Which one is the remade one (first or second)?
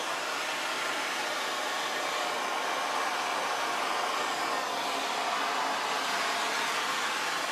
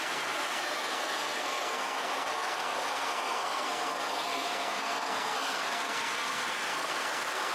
second